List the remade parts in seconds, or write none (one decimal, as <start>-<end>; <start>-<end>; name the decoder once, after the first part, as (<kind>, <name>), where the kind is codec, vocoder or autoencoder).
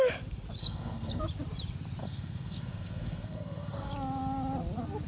0.6-1.2 (codec, SNAC); 2.0-3.9